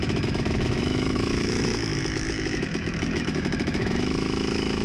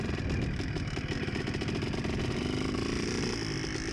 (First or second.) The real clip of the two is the second